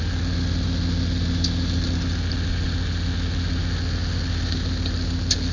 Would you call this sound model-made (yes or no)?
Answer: no